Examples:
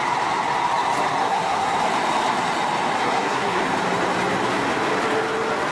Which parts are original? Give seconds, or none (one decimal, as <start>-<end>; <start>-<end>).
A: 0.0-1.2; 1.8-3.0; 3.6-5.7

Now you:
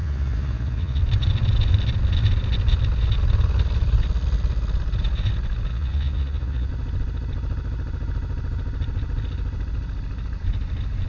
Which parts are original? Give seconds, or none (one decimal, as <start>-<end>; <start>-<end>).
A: 1.0-5.7; 6.7-11.1

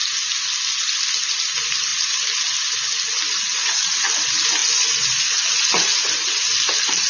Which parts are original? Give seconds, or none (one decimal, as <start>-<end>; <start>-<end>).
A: 0.0-7.1

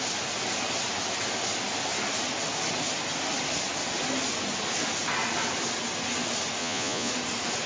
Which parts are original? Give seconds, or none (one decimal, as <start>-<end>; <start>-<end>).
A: 0.0-6.6; 7.1-7.7